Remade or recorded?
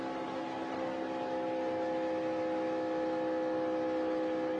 recorded